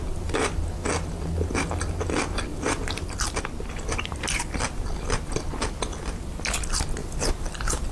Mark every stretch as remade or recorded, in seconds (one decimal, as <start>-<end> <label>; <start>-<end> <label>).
0.0-2.5 recorded; 2.5-3.1 remade; 3.1-7.0 recorded; 7.0-7.9 remade